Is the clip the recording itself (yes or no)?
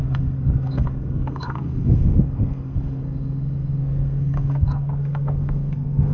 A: no